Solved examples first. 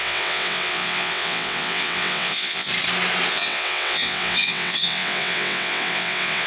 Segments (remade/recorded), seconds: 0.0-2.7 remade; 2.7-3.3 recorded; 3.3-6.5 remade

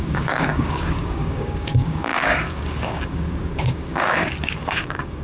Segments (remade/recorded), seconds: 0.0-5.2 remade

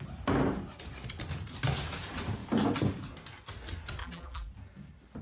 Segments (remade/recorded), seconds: 0.0-4.0 recorded; 4.0-4.5 remade; 4.5-5.2 recorded